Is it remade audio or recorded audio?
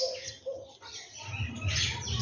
recorded